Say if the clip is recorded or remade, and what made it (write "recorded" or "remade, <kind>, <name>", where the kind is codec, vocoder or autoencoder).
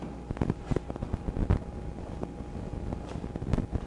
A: recorded